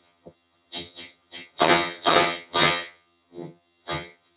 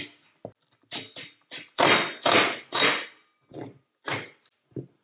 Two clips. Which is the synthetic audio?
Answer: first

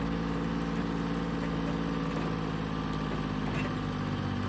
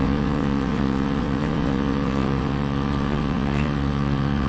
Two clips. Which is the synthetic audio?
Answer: second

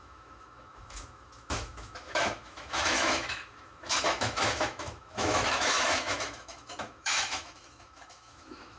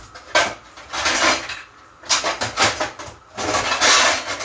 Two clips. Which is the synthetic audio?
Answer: first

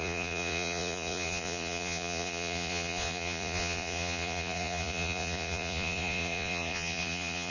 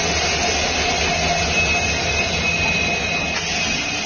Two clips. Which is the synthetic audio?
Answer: first